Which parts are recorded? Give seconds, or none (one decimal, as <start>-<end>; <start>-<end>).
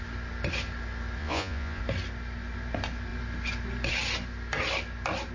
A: 0.0-1.2; 1.8-5.3